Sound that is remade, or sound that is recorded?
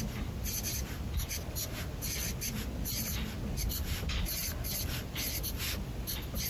recorded